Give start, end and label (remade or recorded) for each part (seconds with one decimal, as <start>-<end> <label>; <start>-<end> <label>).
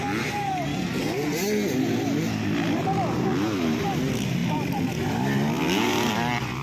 0.0-6.6 recorded